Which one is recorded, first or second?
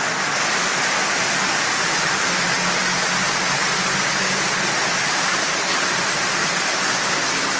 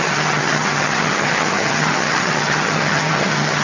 first